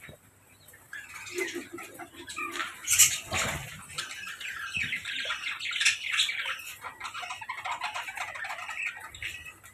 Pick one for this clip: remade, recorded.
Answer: recorded